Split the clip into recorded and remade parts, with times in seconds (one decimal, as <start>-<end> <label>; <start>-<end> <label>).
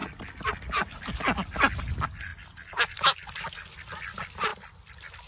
0.0-4.5 recorded; 4.5-5.3 remade